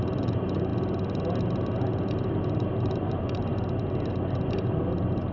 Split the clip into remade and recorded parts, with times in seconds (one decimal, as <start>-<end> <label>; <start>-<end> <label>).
0.0-0.7 remade; 0.7-1.9 recorded; 1.9-3.5 remade; 3.5-4.3 recorded; 4.3-5.3 remade